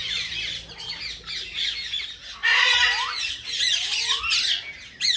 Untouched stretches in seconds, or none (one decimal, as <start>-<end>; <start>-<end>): 0.0-5.2